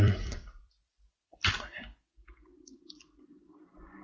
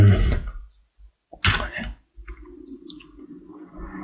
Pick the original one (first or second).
second